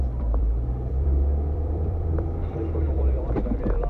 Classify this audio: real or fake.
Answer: fake